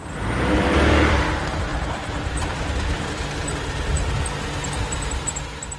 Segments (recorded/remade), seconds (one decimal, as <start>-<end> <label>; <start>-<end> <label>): 0.0-1.7 recorded; 1.7-5.2 remade; 5.2-5.8 recorded